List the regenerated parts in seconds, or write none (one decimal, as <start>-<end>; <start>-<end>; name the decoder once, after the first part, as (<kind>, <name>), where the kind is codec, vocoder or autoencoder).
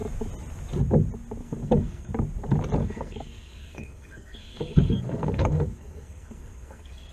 1.4-2.1 (codec, SNAC); 2.8-7.1